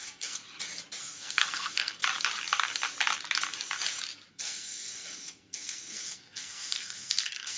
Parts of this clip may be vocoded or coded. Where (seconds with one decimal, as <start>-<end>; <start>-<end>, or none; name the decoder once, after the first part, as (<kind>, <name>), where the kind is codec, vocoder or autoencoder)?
0.0-0.4 (codec, SNAC); 1.0-2.0; 4.3-7.6